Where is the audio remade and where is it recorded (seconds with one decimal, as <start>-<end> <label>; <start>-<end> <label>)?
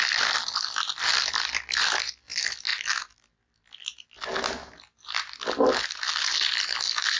0.0-7.2 recorded